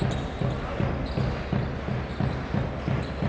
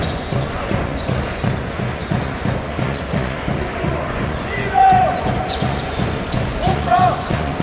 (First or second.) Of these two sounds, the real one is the first